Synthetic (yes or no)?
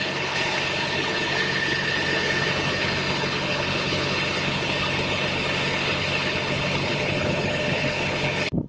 yes